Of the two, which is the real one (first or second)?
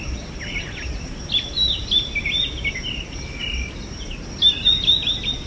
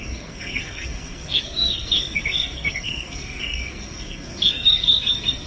first